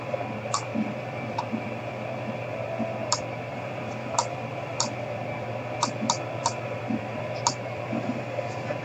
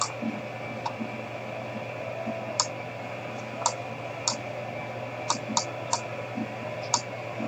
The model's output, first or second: first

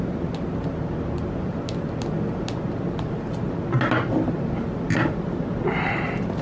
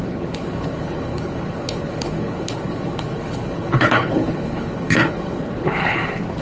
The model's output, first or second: second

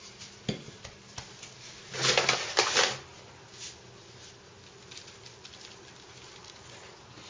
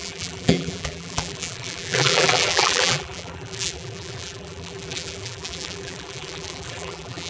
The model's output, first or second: second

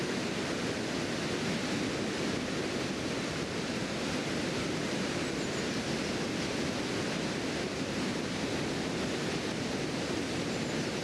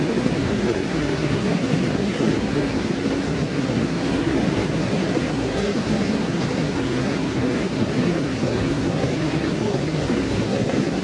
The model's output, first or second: second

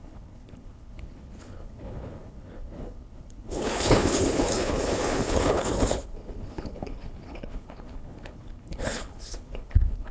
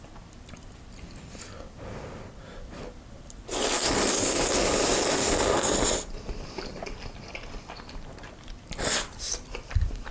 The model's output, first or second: first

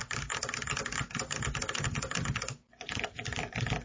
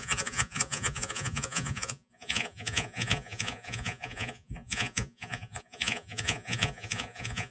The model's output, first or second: second